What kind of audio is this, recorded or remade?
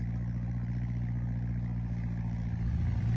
recorded